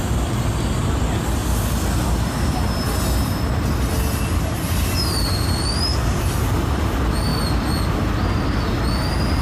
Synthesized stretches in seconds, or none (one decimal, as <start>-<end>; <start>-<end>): none